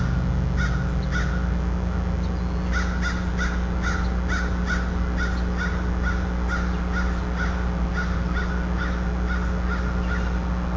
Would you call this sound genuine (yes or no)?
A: yes